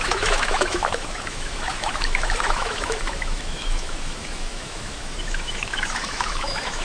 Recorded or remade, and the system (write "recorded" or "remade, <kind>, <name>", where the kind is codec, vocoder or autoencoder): remade, autoencoder, DAC-VAE